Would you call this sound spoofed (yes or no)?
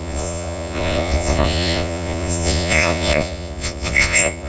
yes